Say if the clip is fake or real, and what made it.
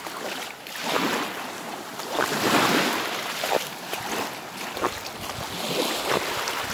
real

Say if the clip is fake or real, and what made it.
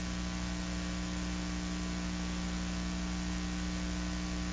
real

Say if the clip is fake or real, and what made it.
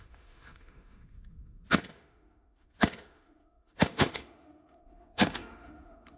fake, autoencoder, DAC-VAE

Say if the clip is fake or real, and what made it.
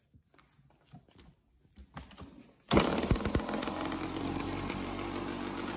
real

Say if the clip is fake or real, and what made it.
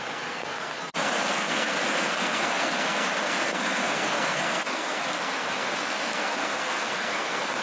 fake, codec, SNAC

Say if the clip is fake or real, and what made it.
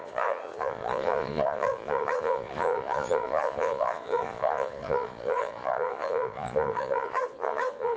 fake, vocoder, Vocos